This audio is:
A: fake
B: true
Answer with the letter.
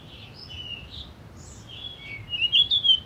B